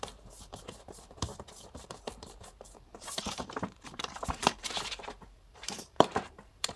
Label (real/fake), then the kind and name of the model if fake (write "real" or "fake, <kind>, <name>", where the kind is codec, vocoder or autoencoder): fake, vocoder, BigVGAN v2